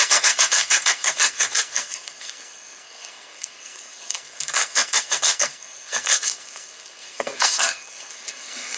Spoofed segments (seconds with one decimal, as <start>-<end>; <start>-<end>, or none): 0.0-8.8